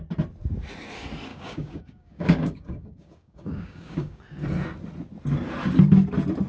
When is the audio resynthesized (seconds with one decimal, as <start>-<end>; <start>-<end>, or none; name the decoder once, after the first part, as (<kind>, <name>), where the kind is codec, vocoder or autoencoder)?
1.3-4.2 (codec, DAC)